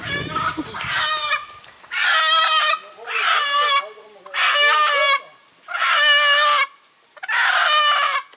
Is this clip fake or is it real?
real